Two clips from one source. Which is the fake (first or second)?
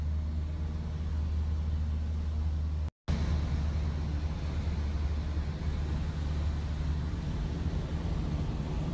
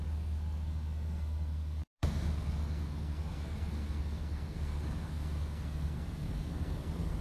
second